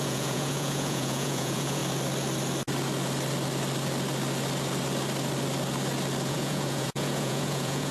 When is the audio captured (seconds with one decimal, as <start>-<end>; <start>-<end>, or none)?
1.8-6.3